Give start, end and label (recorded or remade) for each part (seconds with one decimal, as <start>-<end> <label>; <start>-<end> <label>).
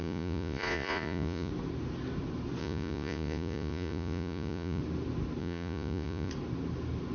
0.0-1.5 remade; 1.5-2.6 recorded; 2.6-4.8 remade; 4.8-5.4 recorded; 5.4-6.3 remade; 6.3-7.1 recorded